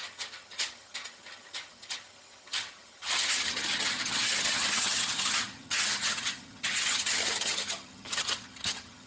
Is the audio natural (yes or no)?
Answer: no